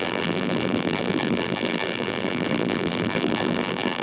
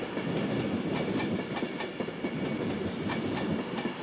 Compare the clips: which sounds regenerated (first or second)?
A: first